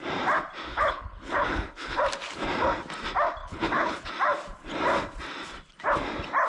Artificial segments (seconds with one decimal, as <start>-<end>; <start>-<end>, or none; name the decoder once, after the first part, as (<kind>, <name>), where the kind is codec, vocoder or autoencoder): 0.7-2.0 (codec, HILCodec); 3.4-4.1